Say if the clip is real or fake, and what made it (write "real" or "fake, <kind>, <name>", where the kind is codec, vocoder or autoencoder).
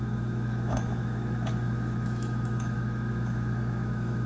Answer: fake, autoencoder, DAC-VAE